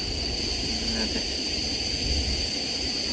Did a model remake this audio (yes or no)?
no